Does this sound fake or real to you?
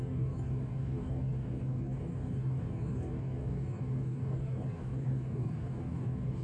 fake